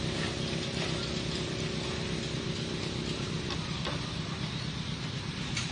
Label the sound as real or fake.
real